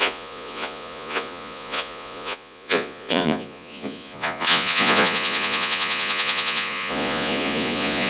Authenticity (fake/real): fake